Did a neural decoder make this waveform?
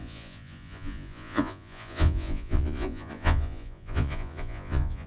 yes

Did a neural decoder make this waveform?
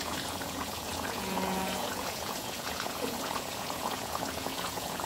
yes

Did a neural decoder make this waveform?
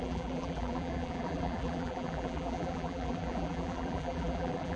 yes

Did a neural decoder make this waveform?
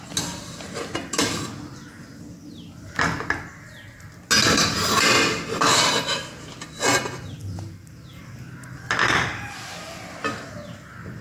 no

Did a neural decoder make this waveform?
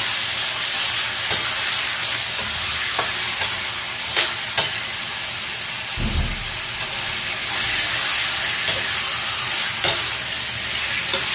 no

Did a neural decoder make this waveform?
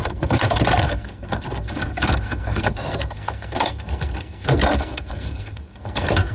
yes